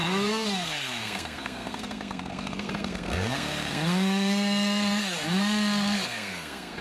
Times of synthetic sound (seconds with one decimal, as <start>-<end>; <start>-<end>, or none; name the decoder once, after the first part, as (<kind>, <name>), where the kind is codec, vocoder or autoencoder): 0.0-6.8 (codec, SNAC)